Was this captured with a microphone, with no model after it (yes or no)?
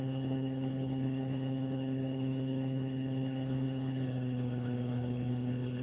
no